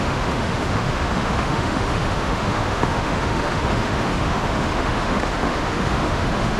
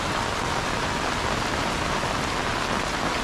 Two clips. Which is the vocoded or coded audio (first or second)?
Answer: first